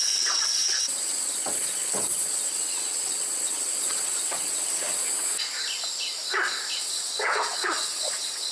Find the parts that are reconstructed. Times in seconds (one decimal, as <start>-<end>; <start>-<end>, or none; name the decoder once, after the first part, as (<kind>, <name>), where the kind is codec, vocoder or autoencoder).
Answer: 0.0-5.0 (vocoder, WaveNeXt); 6.8-8.5